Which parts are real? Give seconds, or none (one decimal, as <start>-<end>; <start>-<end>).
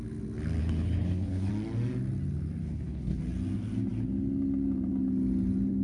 0.0-0.6; 1.5-2.6; 3.2-5.8